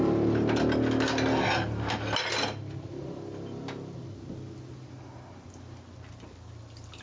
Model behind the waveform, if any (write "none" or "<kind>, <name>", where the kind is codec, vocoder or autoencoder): none